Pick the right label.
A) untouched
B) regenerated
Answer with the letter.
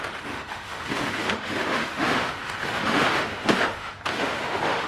B